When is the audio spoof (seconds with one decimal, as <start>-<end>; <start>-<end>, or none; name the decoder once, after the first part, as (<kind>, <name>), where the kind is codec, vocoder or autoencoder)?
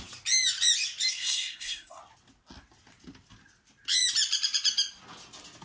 1.1-2.0 (codec, SNAC)